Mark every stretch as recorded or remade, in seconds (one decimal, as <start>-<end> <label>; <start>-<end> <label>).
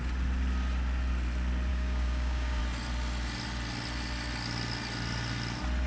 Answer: 0.0-1.7 recorded; 1.7-2.6 remade; 2.6-5.9 recorded